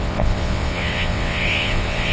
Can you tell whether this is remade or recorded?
remade